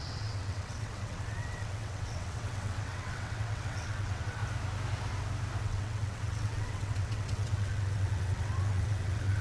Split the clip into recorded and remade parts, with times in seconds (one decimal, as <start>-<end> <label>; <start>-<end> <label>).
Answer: 0.0-4.4 remade; 4.4-5.6 recorded; 5.6-9.4 remade